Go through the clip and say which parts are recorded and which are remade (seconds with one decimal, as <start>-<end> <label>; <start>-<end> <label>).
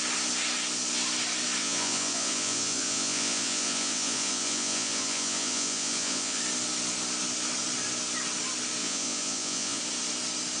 0.0-1.6 recorded; 1.6-6.4 remade; 6.4-8.8 recorded; 8.8-9.8 remade; 9.8-10.6 recorded